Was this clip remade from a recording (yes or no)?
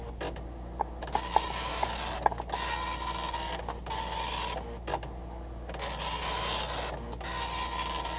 no